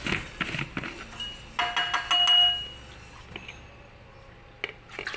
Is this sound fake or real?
real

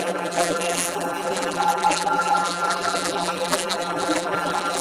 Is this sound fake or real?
fake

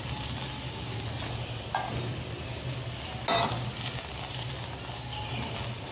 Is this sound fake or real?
real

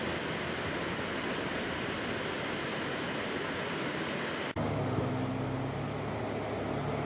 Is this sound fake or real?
real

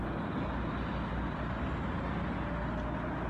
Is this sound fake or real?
real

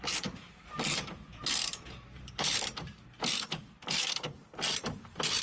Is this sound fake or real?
fake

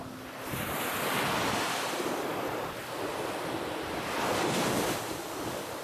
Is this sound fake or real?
real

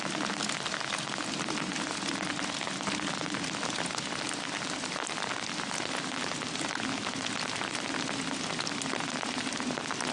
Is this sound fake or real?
real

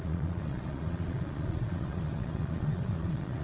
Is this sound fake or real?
fake